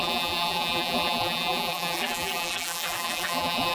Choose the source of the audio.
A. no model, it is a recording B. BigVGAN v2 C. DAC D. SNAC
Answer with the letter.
B